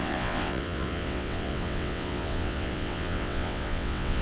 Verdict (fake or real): fake